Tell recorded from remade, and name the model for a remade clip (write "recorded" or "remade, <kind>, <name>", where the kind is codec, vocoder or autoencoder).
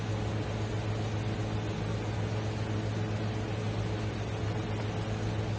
recorded